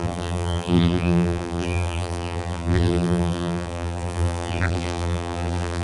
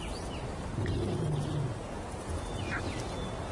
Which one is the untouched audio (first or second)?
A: second